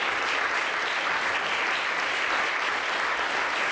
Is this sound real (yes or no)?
yes